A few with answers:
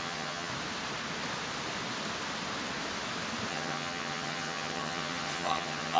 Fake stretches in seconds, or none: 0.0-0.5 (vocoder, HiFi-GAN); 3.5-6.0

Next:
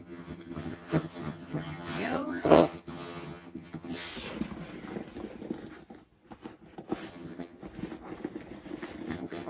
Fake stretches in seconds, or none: 0.0-4.1 (vocoder, HiFi-GAN); 7.1-7.6; 9.1-9.5

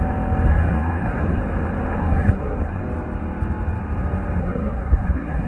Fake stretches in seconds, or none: 0.5-1.4 (codec, SNAC); 2.0-2.8; 4.4-5.5

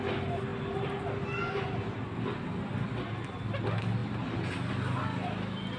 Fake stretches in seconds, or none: none